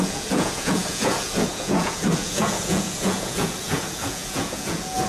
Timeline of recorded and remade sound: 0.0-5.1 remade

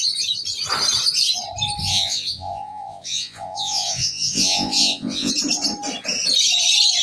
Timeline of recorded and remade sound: 0.0-1.8 recorded; 1.8-5.3 remade; 5.3-7.0 recorded

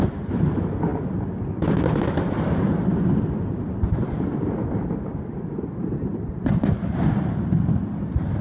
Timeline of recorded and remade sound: 0.0-8.4 recorded

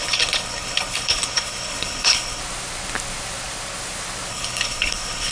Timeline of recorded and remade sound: 0.0-2.4 remade; 2.4-4.3 recorded; 4.3-5.3 remade

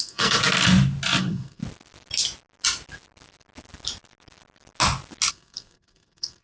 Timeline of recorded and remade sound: 0.0-0.4 remade; 0.4-1.2 recorded; 1.2-1.6 remade; 1.6-5.3 recorded; 5.3-6.4 remade

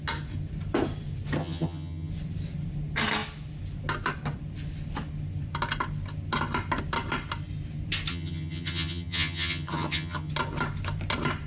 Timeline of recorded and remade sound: 0.0-1.4 recorded; 1.4-2.1 remade; 2.1-8.1 recorded; 8.1-10.3 remade; 10.3-11.5 recorded

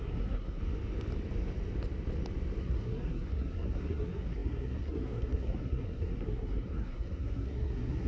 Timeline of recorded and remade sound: 0.0-0.6 remade; 0.6-2.6 recorded; 2.6-8.1 remade

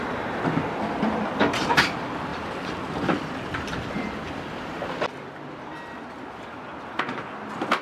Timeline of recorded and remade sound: 0.0-2.3 recorded; 2.3-4.4 remade; 4.4-7.8 recorded